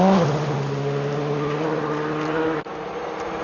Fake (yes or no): no